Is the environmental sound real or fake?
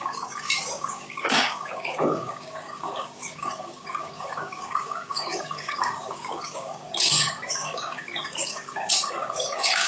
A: fake